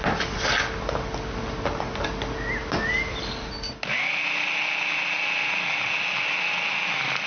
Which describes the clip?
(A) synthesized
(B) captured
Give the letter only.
B